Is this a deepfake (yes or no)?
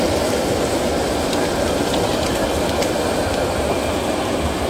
no